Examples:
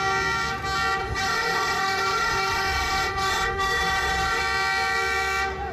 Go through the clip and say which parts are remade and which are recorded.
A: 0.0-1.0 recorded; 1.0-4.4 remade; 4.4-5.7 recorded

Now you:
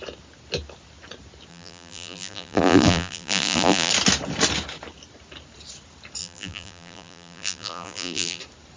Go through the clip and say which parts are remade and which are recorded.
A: 0.0-1.5 recorded; 1.5-3.9 remade; 3.9-6.2 recorded; 6.2-8.4 remade; 8.4-8.8 recorded